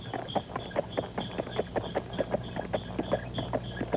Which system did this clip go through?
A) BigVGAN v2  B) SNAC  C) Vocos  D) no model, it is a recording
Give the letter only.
D